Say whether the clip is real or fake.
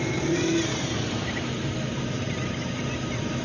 fake